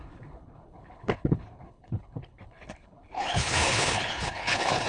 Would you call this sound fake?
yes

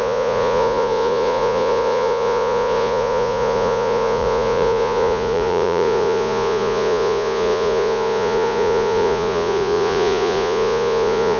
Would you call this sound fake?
yes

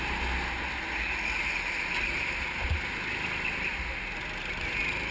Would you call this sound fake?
no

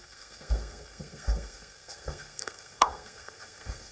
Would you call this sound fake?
yes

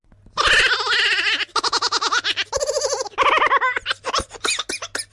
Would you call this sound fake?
no